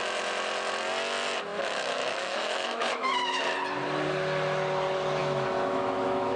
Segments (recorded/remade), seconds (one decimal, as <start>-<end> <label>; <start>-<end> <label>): 0.0-1.5 recorded; 1.5-3.4 remade; 3.4-5.2 recorded; 5.2-6.4 remade